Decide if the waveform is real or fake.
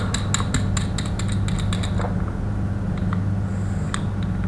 real